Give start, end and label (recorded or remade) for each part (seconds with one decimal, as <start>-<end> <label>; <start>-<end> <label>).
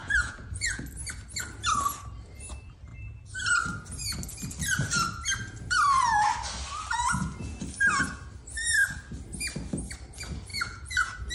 0.0-0.8 remade; 0.8-10.5 recorded; 10.5-11.3 remade